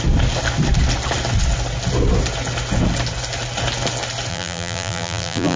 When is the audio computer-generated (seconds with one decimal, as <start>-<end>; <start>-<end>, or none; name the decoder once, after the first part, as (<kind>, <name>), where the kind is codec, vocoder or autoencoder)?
4.3-5.6 (vocoder, BigVGAN v2)